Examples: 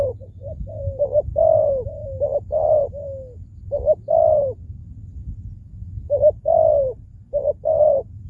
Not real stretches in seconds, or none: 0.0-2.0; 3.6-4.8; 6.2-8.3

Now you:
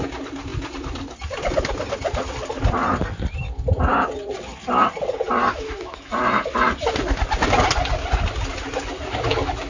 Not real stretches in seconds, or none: 5.5-6.1

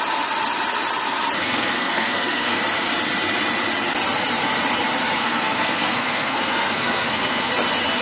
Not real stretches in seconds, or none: 1.4-2.6; 5.2-7.5

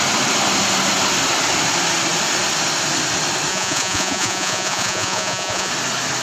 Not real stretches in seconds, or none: 3.5-5.7

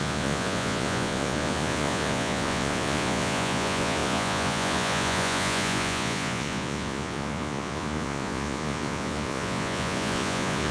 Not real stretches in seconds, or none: 0.0-10.7

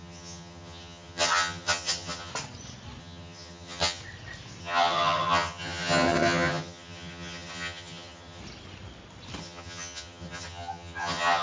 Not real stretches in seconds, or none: 0.0-2.3; 3.0-4.0; 4.6-8.4; 9.4-11.4

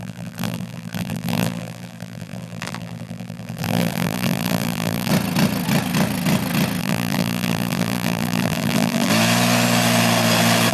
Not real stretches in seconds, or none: 0.0-5.1; 6.8-9.1

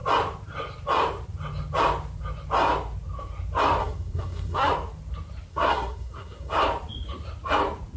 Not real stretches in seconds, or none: 3.8-4.7; 5.5-6.6